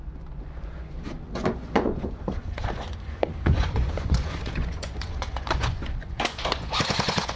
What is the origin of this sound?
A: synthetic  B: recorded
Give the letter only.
A